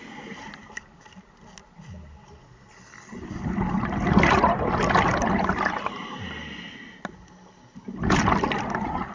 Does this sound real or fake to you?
real